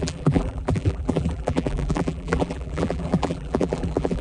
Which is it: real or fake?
fake